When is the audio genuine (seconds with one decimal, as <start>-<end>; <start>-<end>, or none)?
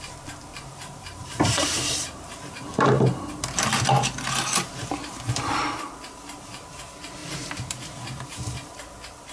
0.0-0.5; 3.3-7.2; 8.7-9.3